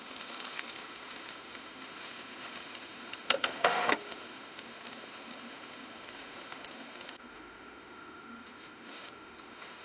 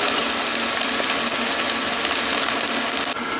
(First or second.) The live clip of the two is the second